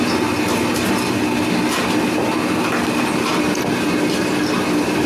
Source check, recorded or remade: recorded